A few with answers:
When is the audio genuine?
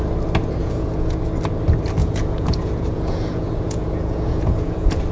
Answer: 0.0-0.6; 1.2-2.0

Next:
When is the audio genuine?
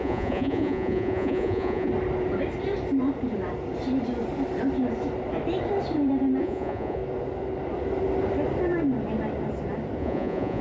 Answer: 1.9-6.4; 7.0-10.0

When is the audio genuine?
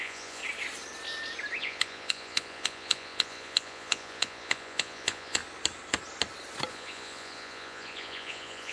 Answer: 0.4-1.6; 5.4-6.7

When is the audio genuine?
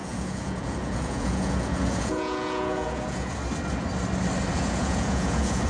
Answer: 3.4-4.5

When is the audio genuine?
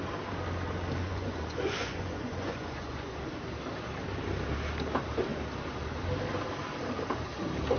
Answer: 0.0-1.0; 3.2-7.8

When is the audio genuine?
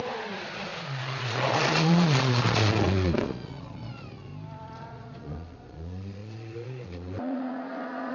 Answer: 4.3-4.8